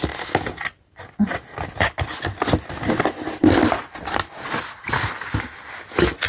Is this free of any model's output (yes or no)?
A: yes